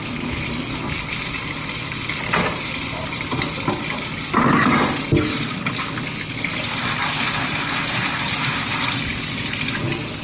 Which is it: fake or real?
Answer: real